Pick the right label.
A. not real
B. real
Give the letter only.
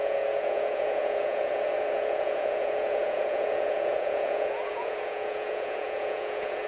A